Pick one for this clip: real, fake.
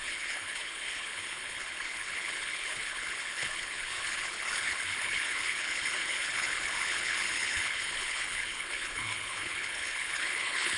fake